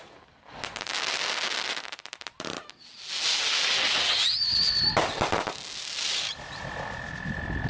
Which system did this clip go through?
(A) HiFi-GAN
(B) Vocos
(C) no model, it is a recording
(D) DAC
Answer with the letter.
C